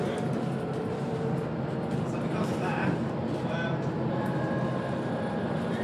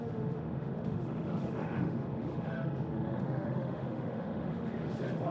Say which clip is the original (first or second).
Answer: first